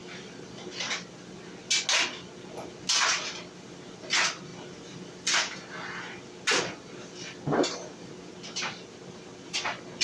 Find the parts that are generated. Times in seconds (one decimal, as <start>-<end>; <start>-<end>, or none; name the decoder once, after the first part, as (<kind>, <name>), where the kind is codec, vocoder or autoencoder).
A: none